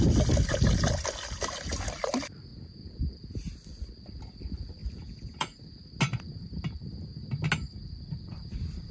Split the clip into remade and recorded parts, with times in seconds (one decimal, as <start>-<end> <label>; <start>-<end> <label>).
0.0-2.5 recorded; 2.5-3.1 remade; 3.1-4.8 recorded; 4.8-5.6 remade; 5.6-8.9 recorded